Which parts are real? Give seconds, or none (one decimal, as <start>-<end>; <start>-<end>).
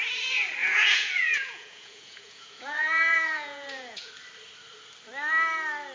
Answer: 0.0-0.6; 4.1-5.9